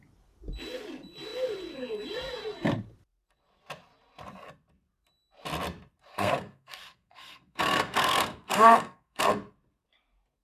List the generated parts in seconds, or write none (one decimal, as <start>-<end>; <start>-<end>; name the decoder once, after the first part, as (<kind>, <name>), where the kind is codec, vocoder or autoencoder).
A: 6.1-9.3 (codec, SNAC)